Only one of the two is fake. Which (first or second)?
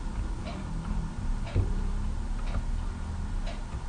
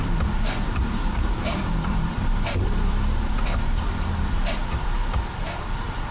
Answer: second